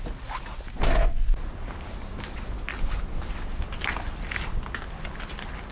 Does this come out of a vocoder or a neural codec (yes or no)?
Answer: no